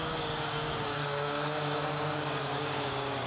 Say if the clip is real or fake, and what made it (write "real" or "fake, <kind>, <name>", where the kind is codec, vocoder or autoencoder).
fake, codec, DAC